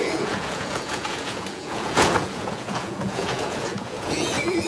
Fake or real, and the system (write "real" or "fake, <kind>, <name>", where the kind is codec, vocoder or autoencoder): fake, vocoder, Vocos